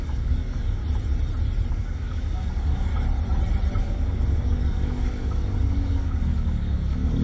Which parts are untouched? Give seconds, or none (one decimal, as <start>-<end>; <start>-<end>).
0.8-1.7; 2.9-3.8